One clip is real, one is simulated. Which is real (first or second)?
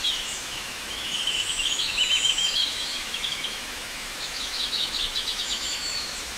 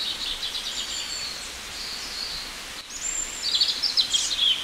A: second